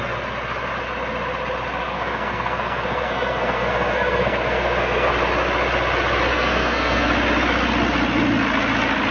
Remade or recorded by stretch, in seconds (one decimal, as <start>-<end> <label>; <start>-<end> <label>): 0.0-1.8 recorded; 1.8-5.1 remade; 5.1-6.3 recorded; 6.3-7.1 remade; 7.1-9.1 recorded